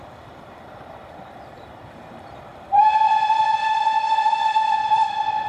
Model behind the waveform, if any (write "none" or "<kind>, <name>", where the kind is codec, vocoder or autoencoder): vocoder, BigVGAN v2